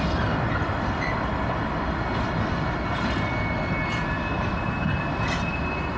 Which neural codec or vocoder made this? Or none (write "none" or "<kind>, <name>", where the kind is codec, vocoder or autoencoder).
none